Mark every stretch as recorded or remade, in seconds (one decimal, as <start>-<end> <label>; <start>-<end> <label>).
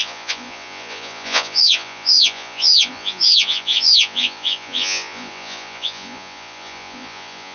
0.0-7.5 remade